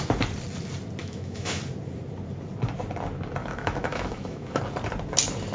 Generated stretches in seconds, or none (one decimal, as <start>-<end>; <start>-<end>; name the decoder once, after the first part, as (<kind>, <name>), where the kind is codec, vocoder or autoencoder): 1.0-1.6 (autoencoder, DAC-VAE); 3.4-4.6